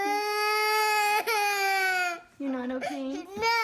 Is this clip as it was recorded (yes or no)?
yes